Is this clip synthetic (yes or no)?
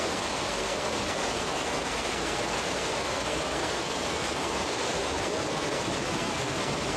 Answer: yes